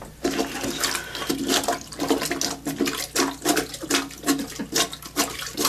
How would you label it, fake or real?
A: real